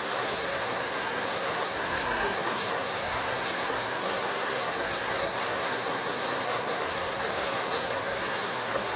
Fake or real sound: fake